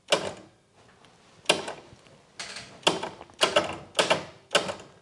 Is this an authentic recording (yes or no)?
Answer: yes